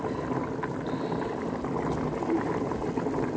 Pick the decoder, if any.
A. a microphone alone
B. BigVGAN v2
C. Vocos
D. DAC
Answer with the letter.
A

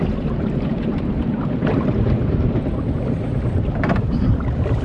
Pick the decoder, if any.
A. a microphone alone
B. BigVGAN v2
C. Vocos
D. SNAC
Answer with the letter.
B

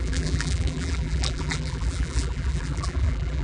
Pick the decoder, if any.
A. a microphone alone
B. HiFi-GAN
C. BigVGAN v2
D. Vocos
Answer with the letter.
C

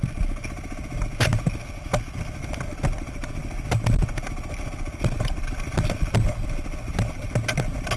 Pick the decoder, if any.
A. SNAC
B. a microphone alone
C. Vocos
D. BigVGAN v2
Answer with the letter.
B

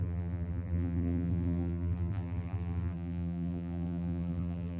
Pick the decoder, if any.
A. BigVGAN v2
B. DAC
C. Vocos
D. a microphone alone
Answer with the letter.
A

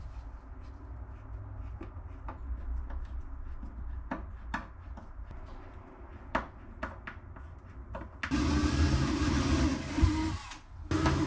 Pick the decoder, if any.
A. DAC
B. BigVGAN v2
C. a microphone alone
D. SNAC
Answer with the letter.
C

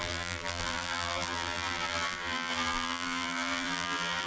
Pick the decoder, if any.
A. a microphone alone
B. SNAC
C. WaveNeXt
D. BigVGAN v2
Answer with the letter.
D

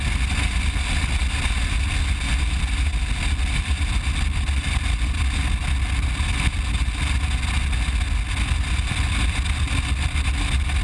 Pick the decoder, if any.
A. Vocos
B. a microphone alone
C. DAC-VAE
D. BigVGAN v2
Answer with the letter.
B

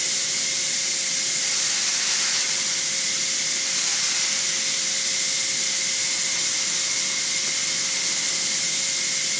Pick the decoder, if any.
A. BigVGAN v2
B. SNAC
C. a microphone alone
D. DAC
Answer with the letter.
C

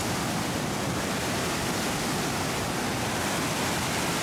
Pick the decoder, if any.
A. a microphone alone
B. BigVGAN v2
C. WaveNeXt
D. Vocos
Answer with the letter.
A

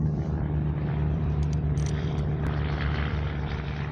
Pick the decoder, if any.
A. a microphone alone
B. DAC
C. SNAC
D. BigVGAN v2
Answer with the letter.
D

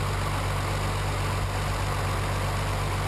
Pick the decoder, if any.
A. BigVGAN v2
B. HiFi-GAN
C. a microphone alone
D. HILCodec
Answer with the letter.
C